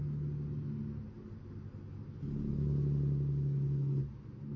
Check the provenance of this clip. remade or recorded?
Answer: recorded